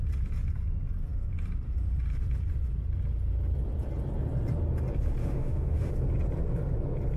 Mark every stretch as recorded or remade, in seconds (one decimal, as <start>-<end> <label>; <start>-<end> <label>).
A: 0.0-5.2 recorded; 5.2-5.9 remade; 5.9-7.2 recorded